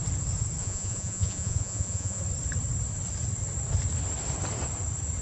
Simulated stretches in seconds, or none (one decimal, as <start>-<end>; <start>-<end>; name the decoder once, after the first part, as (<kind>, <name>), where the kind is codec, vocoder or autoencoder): 0.6-2.2 (vocoder, Vocos)

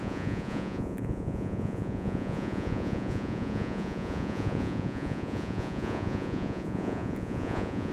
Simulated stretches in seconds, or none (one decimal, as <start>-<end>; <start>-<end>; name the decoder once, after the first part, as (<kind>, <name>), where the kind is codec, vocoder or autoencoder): 0.0-7.9 (vocoder, Vocos)

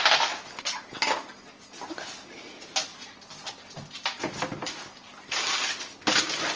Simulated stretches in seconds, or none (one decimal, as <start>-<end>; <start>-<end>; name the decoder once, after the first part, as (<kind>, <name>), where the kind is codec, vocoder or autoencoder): 5.1-6.6 (vocoder, BigVGAN v2)